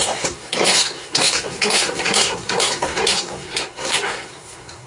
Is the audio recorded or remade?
remade